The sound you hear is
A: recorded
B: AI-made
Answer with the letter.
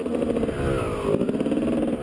A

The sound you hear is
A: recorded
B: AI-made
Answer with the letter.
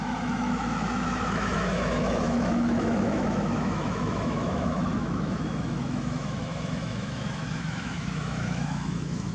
B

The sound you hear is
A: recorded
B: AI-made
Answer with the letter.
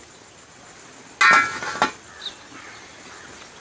A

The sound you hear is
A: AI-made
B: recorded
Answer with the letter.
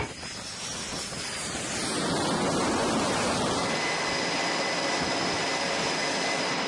B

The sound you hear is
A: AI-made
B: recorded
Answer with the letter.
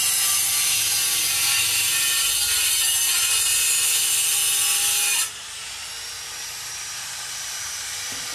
B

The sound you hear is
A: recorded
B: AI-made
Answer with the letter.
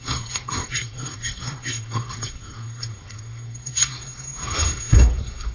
B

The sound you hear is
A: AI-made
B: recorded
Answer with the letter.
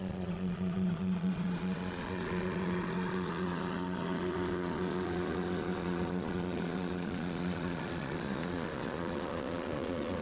A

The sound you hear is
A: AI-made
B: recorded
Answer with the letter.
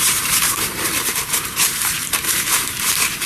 A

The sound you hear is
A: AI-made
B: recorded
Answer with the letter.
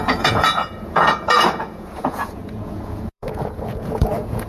A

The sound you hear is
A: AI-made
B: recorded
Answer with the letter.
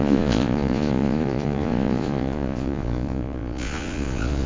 A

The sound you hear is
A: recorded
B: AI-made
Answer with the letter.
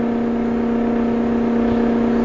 A